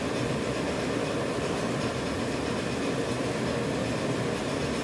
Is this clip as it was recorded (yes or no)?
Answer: yes